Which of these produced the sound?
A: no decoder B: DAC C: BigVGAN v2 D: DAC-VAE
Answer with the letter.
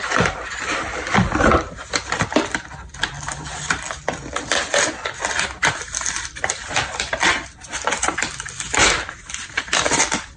C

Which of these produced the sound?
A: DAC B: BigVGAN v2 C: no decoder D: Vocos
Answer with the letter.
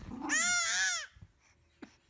C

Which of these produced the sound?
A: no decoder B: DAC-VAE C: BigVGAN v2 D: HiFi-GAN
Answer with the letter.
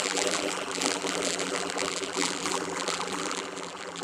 C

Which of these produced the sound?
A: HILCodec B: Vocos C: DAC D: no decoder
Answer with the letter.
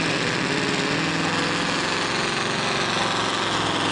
D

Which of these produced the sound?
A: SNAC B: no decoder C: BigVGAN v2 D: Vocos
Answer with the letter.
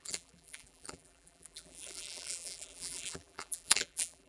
C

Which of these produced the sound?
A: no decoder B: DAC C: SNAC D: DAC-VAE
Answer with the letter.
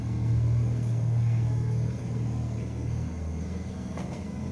C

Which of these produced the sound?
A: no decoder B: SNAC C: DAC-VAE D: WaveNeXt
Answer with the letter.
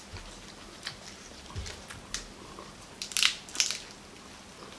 A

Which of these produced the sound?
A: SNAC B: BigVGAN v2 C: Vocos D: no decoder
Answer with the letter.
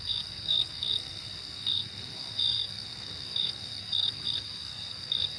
A